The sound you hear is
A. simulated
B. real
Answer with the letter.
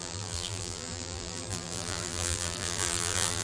A